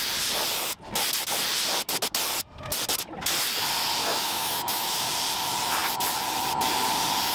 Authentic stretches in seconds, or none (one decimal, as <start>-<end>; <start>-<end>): 0.0-4.0; 5.1-7.3